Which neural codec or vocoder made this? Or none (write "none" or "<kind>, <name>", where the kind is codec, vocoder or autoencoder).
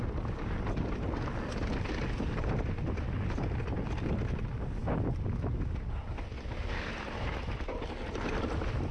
none